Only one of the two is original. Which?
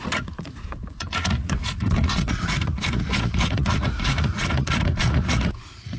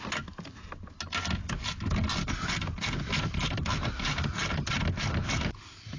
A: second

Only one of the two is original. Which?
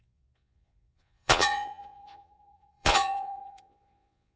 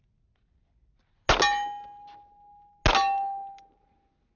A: second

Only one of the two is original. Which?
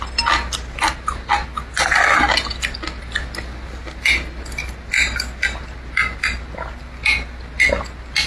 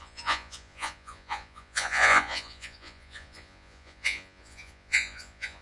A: first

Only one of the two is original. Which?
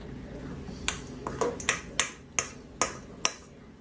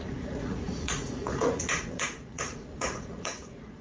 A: first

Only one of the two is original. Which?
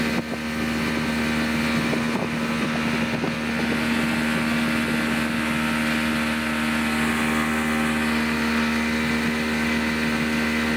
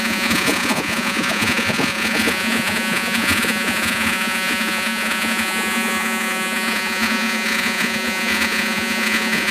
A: first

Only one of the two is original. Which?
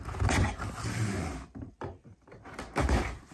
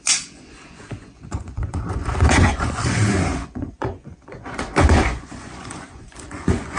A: first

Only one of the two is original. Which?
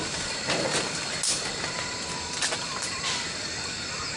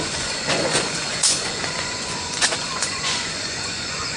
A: first